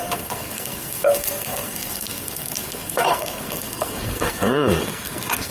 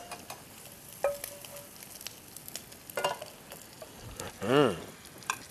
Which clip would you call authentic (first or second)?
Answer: second